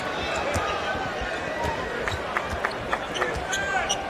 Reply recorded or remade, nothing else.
recorded